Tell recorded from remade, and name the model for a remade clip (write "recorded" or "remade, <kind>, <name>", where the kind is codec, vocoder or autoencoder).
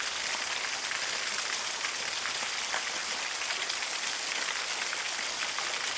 recorded